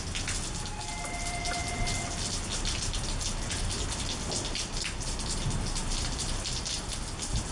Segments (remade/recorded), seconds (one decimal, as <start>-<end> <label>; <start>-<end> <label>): 0.0-7.5 recorded